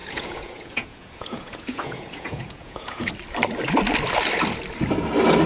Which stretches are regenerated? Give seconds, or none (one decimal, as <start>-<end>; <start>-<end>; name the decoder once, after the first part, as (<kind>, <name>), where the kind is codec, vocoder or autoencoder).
0.0-3.1 (vocoder, Vocos)